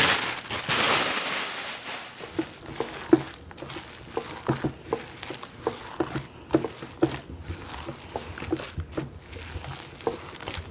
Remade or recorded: recorded